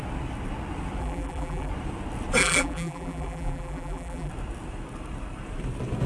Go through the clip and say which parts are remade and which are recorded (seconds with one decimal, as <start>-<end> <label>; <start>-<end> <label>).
0.0-1.0 recorded; 1.0-1.7 remade; 1.7-2.4 recorded; 2.4-4.3 remade; 4.3-6.1 recorded